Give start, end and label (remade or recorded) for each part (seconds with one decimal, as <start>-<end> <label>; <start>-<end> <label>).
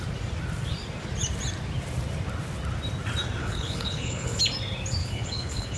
0.0-3.4 recorded; 3.4-4.4 remade; 4.4-5.0 recorded; 5.0-5.8 remade